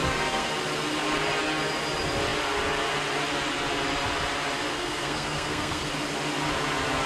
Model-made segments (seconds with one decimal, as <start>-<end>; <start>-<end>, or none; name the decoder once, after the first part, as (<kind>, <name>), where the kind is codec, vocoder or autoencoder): 0.0-0.5 (codec, SNAC); 4.7-5.9